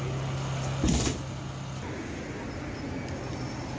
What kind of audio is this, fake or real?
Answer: real